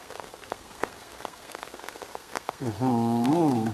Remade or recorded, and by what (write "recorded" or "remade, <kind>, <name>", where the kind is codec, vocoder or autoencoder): remade, codec, SNAC